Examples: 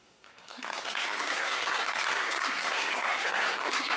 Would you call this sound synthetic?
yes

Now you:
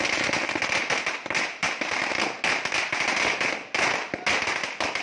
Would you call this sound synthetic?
no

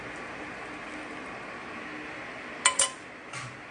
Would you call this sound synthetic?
no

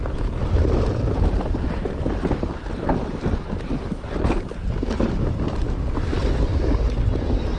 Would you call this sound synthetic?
no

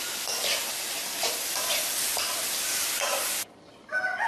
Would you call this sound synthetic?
no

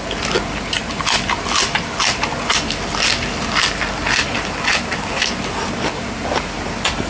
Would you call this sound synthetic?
no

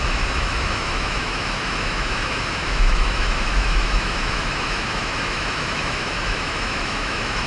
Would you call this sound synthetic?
yes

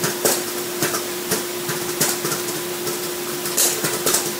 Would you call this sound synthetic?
yes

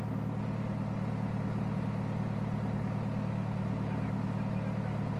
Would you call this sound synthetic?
no